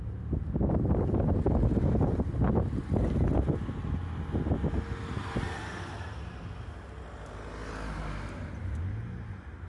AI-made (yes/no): no